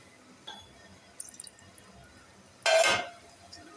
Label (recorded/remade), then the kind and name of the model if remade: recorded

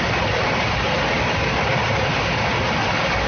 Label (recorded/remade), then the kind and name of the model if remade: recorded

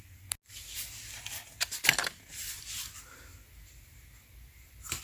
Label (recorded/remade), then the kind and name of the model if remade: recorded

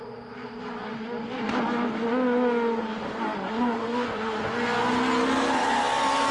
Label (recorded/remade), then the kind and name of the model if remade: recorded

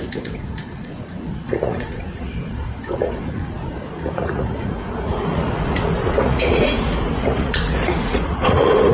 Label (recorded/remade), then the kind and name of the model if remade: remade, vocoder, Vocos